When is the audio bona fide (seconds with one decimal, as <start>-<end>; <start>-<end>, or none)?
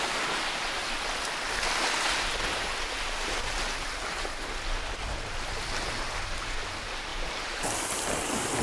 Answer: 0.0-7.1; 7.6-8.6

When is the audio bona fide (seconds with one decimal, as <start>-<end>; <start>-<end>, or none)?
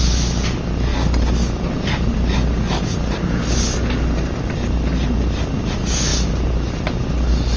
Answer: 0.0-0.9; 1.8-6.1; 7.1-7.6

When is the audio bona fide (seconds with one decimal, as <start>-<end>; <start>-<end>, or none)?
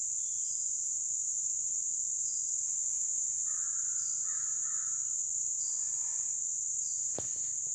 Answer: 0.0-1.3; 1.9-5.7; 6.9-7.7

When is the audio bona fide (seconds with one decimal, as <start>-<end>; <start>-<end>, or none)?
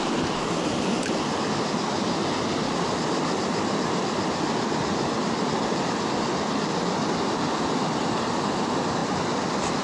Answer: 0.0-9.0